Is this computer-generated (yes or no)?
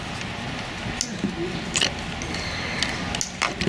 no